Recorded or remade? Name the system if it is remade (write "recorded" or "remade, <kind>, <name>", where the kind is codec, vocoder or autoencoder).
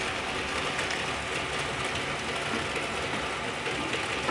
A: recorded